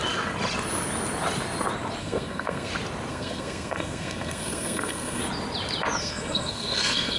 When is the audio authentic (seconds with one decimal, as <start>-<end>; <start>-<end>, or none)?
0.0-2.0; 2.7-3.1; 5.2-6.0